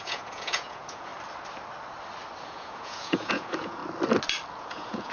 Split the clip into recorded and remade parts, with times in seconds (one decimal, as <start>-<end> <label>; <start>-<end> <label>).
0.0-1.1 remade; 1.1-2.4 recorded; 2.4-3.8 remade; 3.8-4.5 recorded; 4.5-5.1 remade